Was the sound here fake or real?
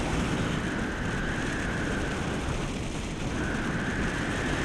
fake